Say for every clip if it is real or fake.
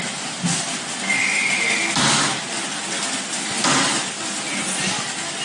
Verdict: real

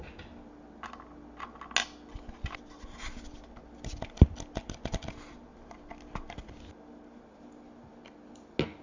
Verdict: real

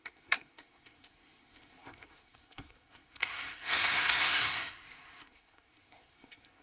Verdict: fake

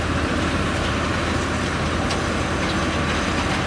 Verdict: real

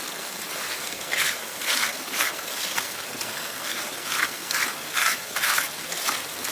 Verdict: fake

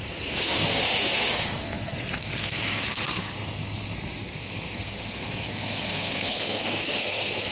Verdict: fake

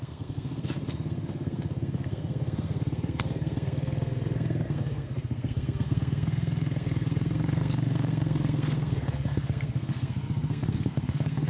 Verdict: fake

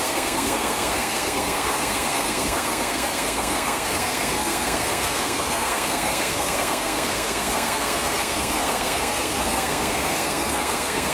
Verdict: fake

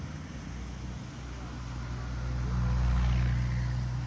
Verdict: real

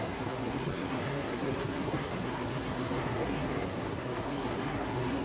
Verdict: fake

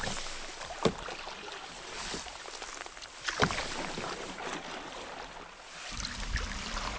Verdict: real